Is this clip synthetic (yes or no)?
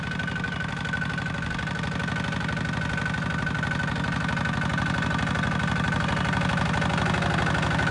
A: no